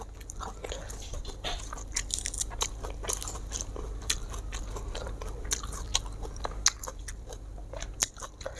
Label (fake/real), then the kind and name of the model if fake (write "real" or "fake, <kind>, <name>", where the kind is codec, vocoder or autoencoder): real